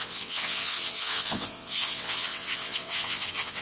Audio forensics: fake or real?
fake